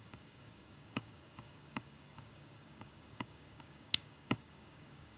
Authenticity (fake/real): fake